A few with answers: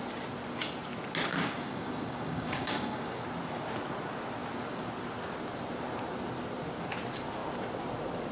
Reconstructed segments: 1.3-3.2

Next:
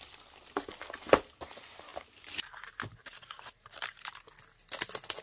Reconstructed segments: 1.9-4.3